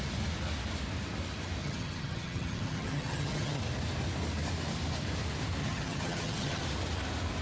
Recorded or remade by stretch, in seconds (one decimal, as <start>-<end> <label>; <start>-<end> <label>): 0.0-1.6 recorded; 1.6-3.6 remade; 3.6-5.6 recorded; 5.6-6.6 remade; 6.6-7.4 recorded